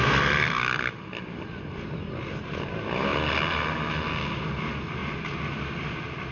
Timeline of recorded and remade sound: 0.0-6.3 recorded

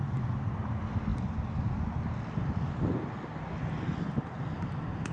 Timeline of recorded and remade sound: 0.0-5.1 recorded